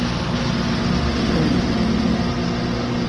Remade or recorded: recorded